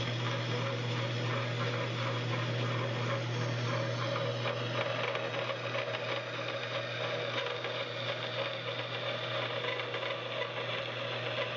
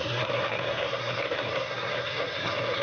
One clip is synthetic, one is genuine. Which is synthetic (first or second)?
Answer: second